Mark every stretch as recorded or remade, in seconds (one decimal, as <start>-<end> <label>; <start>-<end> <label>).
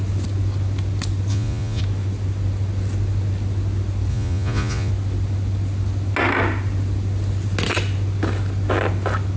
0.0-1.3 recorded; 1.3-1.8 remade; 1.8-4.1 recorded; 4.1-4.9 remade; 4.9-9.4 recorded